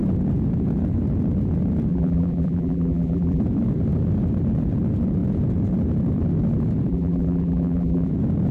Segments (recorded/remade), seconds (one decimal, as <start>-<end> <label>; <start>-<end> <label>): 0.0-1.9 recorded; 1.9-3.4 remade; 3.4-6.9 recorded; 6.9-8.1 remade; 8.1-8.5 recorded